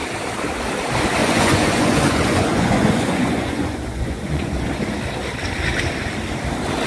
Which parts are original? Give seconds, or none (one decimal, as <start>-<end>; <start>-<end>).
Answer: 0.0-1.2; 4.8-6.9